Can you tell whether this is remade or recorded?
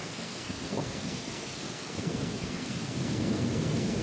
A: remade